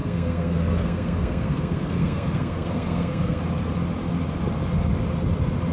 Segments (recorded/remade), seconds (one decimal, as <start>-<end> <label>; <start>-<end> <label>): 0.0-3.4 remade; 3.4-5.7 recorded